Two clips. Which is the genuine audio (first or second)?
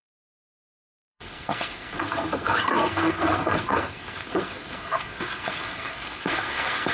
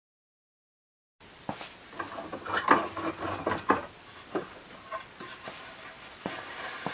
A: second